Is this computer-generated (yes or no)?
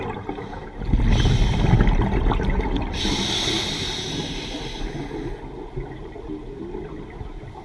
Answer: no